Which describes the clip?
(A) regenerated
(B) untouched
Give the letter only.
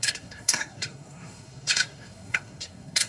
A